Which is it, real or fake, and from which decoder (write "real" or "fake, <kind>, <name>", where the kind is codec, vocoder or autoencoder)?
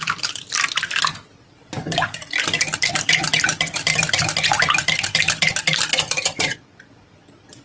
real